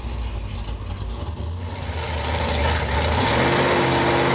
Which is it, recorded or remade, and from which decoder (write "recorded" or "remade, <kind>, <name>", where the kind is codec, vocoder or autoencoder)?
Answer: recorded